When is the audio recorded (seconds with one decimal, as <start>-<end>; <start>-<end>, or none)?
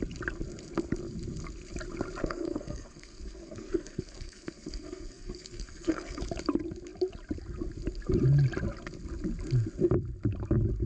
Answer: 0.0-2.2; 6.2-10.9